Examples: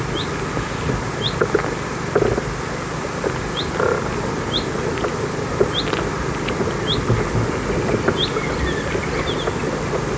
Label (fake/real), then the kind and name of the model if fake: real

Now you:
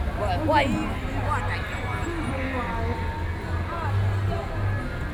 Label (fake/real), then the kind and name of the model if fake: real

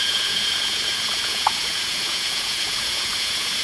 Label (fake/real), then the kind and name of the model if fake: fake, vocoder, Vocos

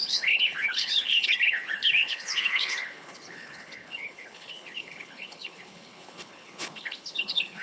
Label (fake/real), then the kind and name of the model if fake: fake, codec, HILCodec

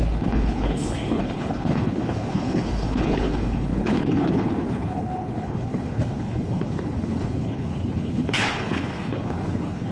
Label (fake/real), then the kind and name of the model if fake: fake, codec, HILCodec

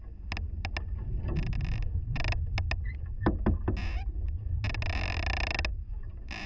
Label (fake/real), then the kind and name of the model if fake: real